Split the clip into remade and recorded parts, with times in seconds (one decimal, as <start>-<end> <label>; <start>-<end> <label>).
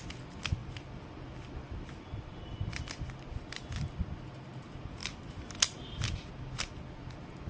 0.0-7.5 recorded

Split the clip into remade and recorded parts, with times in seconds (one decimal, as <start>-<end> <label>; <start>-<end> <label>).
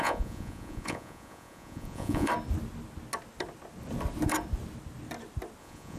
0.0-2.3 remade; 2.3-5.6 recorded; 5.6-6.0 remade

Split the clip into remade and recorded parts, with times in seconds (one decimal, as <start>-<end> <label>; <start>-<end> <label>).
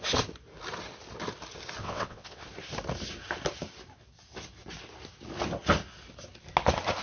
0.0-1.8 recorded; 1.8-2.4 remade; 2.4-7.0 recorded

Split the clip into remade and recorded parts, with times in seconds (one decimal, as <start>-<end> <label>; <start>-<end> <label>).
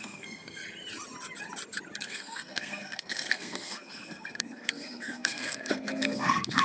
0.0-0.6 remade; 0.6-2.0 recorded; 2.0-6.6 remade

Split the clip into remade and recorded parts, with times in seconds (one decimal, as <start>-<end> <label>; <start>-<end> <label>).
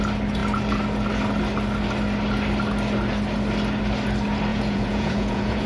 0.0-4.5 recorded; 4.5-5.7 remade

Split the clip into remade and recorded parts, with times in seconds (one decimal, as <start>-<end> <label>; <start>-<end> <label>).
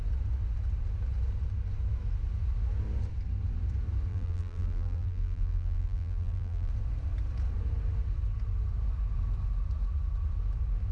0.0-4.1 recorded; 4.1-6.7 remade; 6.7-10.9 recorded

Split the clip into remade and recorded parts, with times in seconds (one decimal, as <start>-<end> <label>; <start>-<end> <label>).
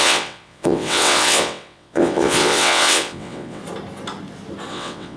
0.0-3.6 remade; 3.6-4.7 recorded; 4.7-5.2 remade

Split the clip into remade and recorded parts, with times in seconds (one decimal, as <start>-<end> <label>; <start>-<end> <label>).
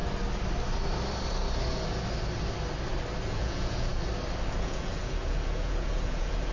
0.0-3.3 recorded; 3.3-3.9 remade; 3.9-4.6 recorded; 4.6-6.5 remade